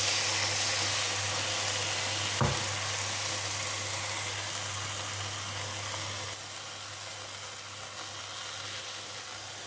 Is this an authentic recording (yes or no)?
yes